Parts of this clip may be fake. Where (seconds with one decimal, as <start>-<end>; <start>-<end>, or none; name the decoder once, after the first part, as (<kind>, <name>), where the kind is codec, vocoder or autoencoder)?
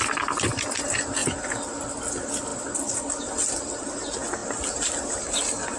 none